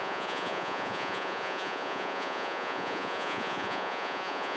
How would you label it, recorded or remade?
remade